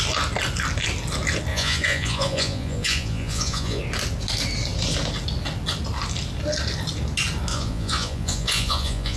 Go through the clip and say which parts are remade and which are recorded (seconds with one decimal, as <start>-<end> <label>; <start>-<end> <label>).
0.0-1.5 recorded; 1.5-3.8 remade; 3.8-7.5 recorded; 7.5-9.2 remade